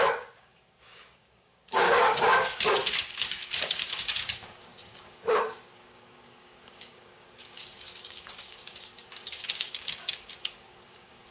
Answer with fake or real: fake